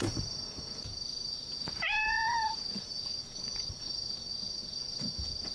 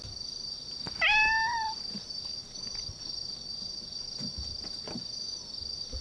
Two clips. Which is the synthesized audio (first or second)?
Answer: first